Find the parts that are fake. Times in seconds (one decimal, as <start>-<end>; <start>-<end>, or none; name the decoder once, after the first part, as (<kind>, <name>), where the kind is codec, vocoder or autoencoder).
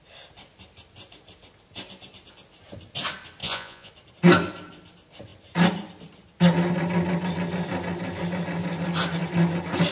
3.4-3.9 (vocoder, Vocos)